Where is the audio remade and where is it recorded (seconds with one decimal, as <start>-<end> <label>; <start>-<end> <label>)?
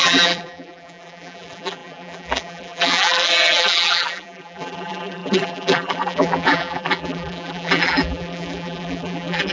0.0-9.5 remade